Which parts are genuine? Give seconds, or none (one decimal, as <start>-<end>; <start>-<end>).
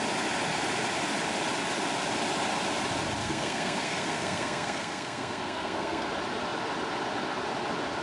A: 0.0-3.2; 6.1-8.0